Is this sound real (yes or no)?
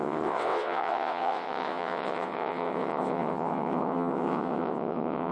no